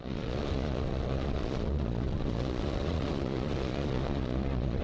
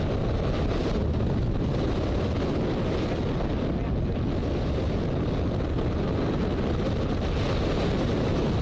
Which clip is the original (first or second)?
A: second